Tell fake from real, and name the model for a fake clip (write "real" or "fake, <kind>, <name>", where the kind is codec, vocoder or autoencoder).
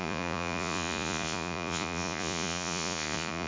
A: fake, vocoder, Vocos